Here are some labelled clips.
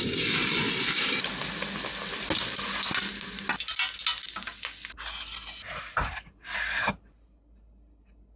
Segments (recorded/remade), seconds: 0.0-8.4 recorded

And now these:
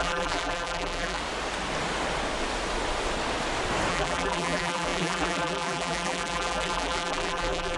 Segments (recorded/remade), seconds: 0.0-1.2 remade; 1.2-3.9 recorded; 3.9-7.8 remade

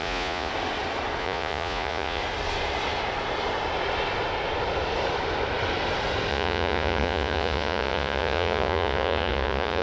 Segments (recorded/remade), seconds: 0.0-0.5 remade; 0.5-1.2 recorded; 1.2-2.2 remade; 2.2-6.3 recorded; 6.3-9.8 remade

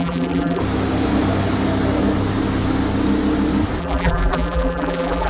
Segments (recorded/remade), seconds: 0.0-0.6 remade; 0.6-3.8 recorded; 3.8-5.3 remade

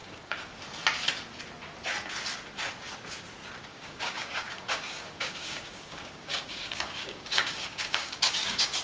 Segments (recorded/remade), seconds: 0.0-0.6 remade; 0.6-3.7 recorded; 3.7-8.8 remade

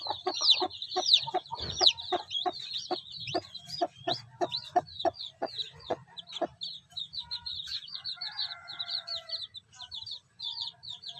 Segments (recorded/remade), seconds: 0.0-6.0 remade; 6.0-7.0 recorded; 7.0-9.1 remade; 9.1-10.4 recorded; 10.4-11.2 remade